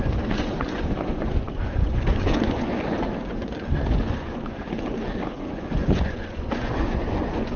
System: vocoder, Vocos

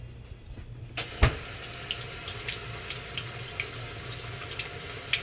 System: none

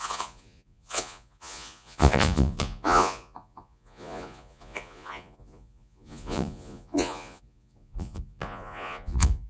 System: vocoder, Vocos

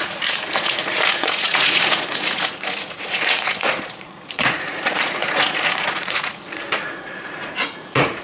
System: vocoder, Vocos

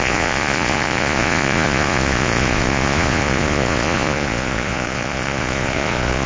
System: vocoder, Vocos